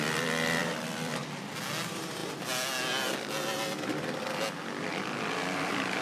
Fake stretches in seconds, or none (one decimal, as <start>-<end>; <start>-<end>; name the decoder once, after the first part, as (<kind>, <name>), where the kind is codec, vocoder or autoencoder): 0.6-1.2 (vocoder, BigVGAN v2)